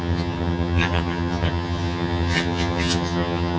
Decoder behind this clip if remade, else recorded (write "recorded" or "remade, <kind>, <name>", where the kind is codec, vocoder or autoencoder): remade, vocoder, HiFi-GAN